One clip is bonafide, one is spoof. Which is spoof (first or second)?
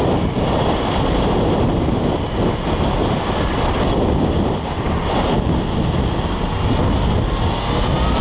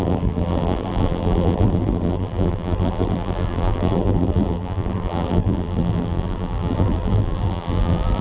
second